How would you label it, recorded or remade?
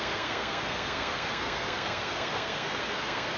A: remade